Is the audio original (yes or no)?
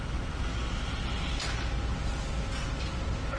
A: yes